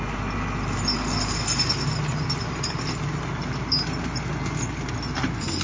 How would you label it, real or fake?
real